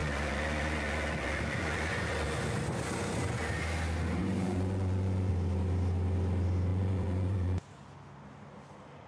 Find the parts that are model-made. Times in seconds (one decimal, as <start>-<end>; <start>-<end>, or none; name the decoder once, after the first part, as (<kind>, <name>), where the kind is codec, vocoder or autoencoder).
0.0-3.5 (vocoder, Vocos); 4.2-5.3; 6.7-7.6